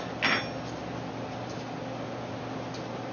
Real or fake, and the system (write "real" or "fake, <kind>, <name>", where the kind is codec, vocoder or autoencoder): real